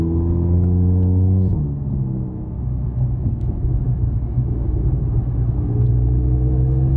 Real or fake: fake